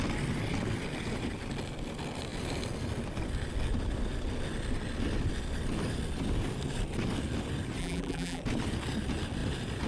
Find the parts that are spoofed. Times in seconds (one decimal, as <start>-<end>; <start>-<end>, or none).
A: 7.8-8.4